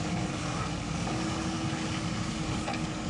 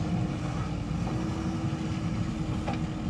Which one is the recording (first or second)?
second